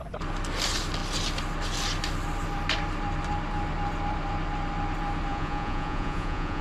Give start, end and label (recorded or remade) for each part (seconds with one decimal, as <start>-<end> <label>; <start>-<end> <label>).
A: 0.0-5.3 recorded; 5.3-6.6 remade